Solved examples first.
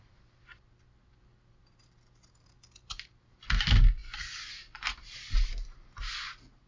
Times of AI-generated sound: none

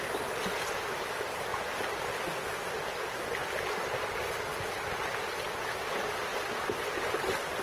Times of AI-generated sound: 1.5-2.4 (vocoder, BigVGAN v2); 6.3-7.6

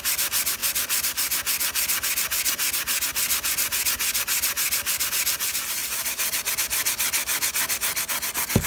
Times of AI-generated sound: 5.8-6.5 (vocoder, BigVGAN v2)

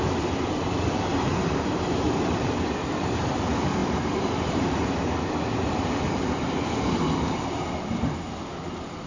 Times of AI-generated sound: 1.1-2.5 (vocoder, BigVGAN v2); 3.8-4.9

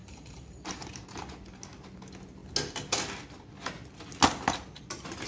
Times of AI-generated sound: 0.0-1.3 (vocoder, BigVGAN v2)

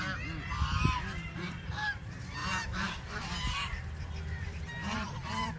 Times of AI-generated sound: 2.4-4.5 (vocoder, BigVGAN v2)

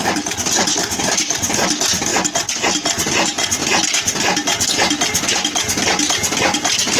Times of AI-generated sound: 0.8-1.5 (vocoder, BigVGAN v2)

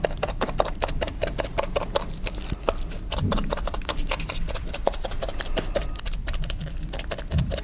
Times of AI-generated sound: 0.0-7.6 (vocoder, BigVGAN v2)